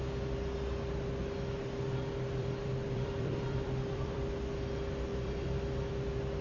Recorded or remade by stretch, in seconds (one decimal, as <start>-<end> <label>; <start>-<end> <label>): 0.0-2.4 recorded; 2.4-4.5 remade; 4.5-5.1 recorded; 5.1-5.9 remade; 5.9-6.4 recorded